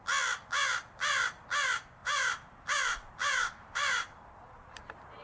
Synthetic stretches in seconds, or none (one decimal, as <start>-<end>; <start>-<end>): 2.0-5.2